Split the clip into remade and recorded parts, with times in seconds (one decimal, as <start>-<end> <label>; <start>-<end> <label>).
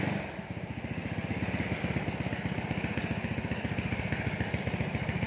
0.0-5.3 recorded